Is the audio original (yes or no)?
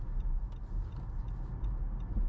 yes